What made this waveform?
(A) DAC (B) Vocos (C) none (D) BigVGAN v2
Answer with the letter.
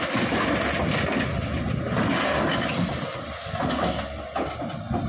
C